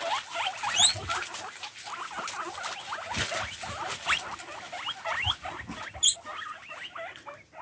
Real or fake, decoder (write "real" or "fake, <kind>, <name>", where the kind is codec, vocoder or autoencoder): real